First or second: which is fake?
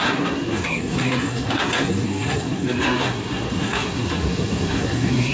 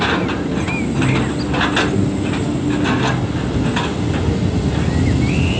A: first